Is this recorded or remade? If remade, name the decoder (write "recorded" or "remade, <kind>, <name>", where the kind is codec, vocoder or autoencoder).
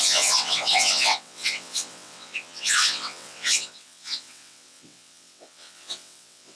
remade, vocoder, WaveNeXt